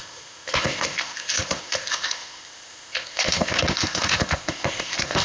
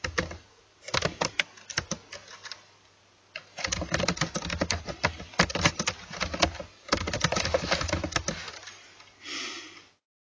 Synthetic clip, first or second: first